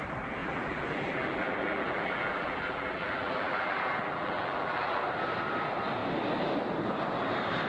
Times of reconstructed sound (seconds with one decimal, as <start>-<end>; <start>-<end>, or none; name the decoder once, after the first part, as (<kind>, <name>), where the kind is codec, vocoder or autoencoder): 0.4-5.0 (vocoder, BigVGAN v2)